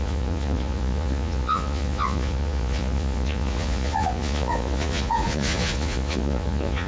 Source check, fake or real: fake